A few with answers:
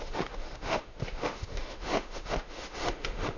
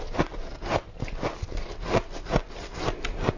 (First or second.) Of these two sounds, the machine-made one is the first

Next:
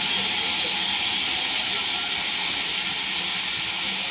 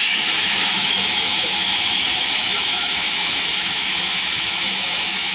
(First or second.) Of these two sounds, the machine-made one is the second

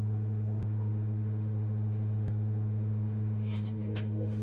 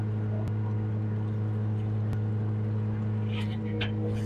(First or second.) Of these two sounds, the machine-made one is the first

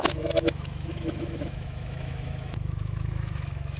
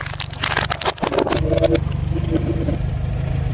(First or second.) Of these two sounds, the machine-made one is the first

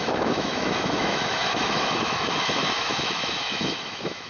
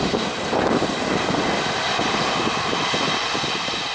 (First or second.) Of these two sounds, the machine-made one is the first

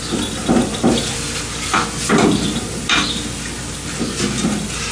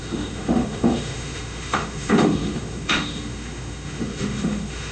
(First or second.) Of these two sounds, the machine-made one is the second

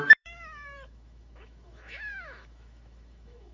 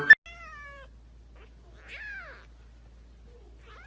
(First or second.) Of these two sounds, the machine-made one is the first